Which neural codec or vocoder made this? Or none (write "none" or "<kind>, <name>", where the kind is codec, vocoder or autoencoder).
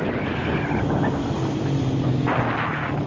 none